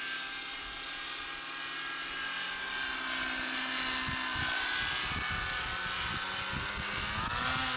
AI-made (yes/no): no